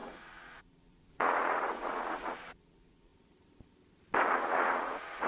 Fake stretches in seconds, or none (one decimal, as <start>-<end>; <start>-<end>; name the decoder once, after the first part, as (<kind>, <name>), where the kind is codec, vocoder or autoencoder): 0.0-3.1 (vocoder, Vocos); 4.3-5.3

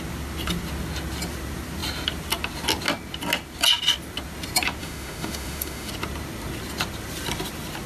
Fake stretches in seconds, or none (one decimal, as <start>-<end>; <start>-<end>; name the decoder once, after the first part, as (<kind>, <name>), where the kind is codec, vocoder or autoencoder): 4.8-5.9 (autoencoder, DAC-VAE)

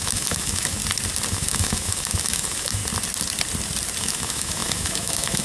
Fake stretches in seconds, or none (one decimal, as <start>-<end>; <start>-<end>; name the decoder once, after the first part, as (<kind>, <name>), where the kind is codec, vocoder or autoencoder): 0.0-0.8 (autoencoder, DAC-VAE); 1.3-2.8; 4.0-5.4

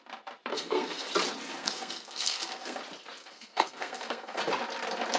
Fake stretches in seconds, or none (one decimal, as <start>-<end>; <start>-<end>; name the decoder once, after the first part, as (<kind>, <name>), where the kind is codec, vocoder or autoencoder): 0.5-1.1 (codec, SNAC); 1.6-2.8; 3.2-4.4

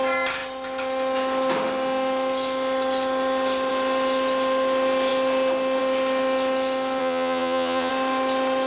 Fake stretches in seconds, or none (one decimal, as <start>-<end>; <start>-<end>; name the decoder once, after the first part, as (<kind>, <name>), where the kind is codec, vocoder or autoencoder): 7.0-7.9 (vocoder, Vocos)

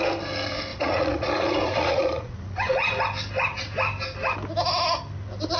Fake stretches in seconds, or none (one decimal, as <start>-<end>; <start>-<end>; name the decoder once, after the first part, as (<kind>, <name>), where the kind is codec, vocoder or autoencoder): 0.7-3.0 (vocoder, Vocos)